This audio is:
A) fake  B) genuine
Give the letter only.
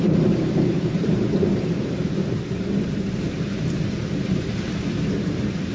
A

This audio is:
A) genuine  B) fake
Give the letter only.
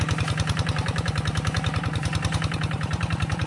B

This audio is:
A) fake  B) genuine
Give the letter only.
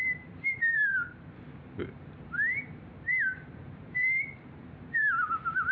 A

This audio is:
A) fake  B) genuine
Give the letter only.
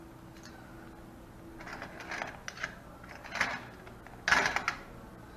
B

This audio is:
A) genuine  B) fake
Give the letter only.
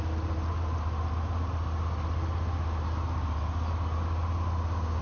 A